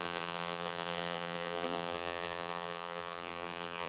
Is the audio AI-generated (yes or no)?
yes